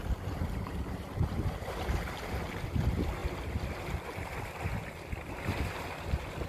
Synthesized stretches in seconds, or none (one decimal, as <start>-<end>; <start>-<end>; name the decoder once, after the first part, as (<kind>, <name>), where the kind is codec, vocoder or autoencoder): none